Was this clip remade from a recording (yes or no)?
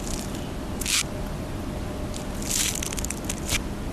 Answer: no